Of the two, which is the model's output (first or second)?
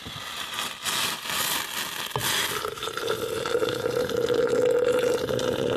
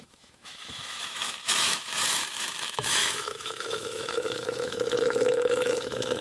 second